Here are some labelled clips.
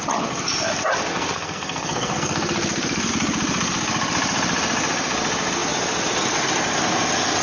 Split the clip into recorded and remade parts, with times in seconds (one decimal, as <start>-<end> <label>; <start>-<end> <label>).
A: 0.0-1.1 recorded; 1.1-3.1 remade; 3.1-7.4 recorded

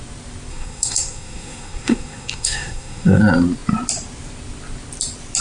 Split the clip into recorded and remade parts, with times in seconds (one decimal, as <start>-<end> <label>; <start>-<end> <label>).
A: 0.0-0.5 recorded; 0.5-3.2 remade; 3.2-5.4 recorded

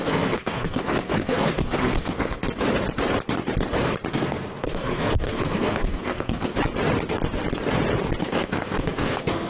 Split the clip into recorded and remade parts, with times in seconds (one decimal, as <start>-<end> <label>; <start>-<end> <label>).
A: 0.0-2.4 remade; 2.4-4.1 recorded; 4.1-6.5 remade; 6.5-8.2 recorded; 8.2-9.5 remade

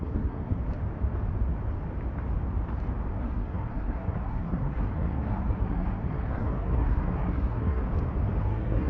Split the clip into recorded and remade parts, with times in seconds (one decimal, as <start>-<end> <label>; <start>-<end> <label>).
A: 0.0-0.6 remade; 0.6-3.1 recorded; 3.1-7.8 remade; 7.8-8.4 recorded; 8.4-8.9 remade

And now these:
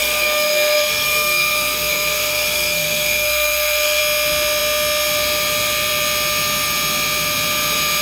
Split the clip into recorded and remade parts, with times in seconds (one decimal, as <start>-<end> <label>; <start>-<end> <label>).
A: 0.0-4.0 remade; 4.0-8.0 recorded

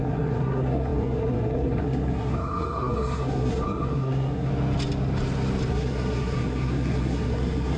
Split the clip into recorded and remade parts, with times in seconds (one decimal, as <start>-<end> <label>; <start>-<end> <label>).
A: 0.0-4.5 remade; 4.5-5.7 recorded; 5.7-7.8 remade

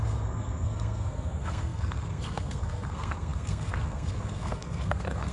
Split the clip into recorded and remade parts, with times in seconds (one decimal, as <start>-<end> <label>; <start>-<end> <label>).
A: 0.0-5.3 remade

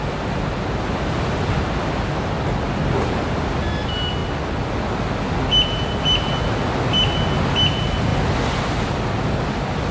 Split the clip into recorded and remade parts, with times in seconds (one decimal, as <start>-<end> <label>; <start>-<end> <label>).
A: 0.0-9.9 recorded